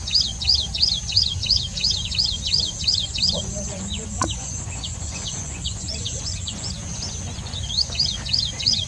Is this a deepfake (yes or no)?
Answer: yes